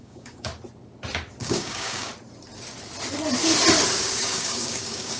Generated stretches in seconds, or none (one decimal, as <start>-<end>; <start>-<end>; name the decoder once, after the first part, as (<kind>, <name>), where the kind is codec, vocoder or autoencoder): 0.0-0.5 (codec, DAC); 1.4-2.1; 4.0-5.2

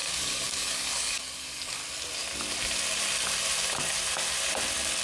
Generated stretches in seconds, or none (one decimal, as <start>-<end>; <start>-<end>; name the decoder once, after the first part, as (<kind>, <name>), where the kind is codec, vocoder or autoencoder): 0.0-1.8 (codec, DAC)